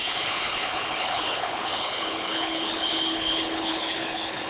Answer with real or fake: fake